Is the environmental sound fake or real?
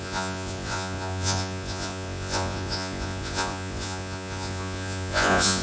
fake